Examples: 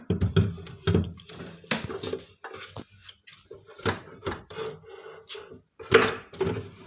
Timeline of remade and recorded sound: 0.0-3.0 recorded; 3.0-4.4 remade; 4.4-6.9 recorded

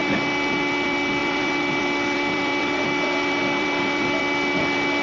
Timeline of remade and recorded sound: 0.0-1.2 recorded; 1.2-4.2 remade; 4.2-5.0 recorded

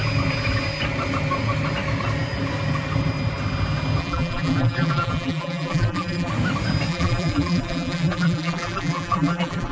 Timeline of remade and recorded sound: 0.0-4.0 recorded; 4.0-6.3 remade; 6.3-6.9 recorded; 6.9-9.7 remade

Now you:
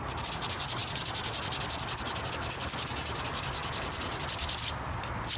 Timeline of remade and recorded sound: 0.0-5.4 remade

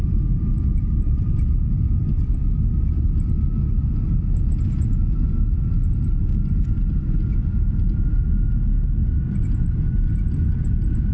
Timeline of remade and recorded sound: 0.0-11.1 recorded

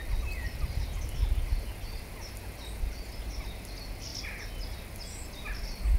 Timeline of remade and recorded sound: 0.0-6.0 recorded